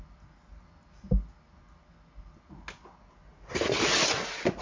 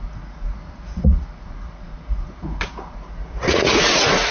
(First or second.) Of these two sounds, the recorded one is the first